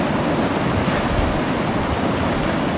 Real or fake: real